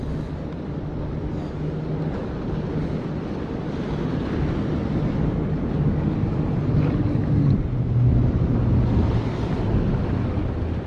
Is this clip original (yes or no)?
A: yes